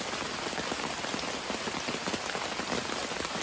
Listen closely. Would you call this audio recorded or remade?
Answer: recorded